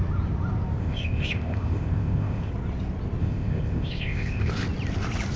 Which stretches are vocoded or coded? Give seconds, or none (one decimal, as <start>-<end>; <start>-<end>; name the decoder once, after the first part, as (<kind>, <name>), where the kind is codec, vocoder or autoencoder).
0.8-2.5 (codec, ZipCodec); 3.2-4.5